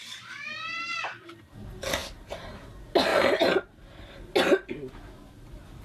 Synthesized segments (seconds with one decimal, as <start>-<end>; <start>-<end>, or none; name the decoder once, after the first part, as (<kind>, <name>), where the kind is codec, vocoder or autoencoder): 3.1-3.7 (vocoder, BigVGAN v2)